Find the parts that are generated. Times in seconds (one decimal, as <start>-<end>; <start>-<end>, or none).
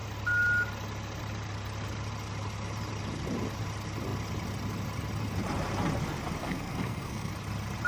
6.4-7.3